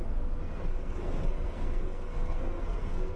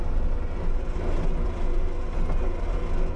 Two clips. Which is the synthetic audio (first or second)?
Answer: first